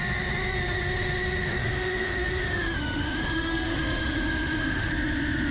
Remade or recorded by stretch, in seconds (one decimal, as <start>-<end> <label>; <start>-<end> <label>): 0.0-1.6 recorded; 1.6-4.9 remade; 4.9-5.5 recorded